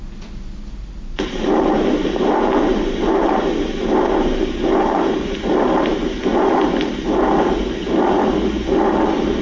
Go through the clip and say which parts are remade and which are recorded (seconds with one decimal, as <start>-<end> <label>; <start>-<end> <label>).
0.0-9.4 recorded